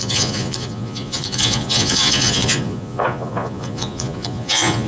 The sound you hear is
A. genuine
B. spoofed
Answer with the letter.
B